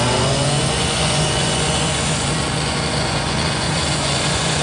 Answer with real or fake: fake